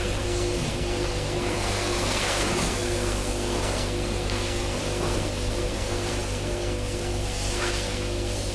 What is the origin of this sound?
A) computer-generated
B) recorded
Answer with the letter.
A